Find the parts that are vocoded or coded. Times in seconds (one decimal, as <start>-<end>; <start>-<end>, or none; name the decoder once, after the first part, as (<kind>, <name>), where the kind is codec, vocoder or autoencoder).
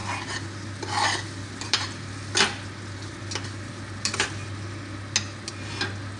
none